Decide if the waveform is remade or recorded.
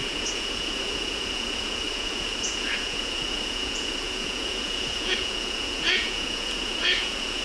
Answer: remade